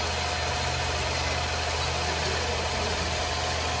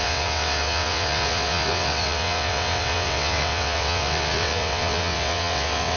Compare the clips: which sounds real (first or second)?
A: first